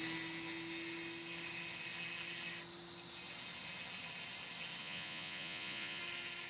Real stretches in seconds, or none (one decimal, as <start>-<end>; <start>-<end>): 0.0-4.8; 6.0-6.5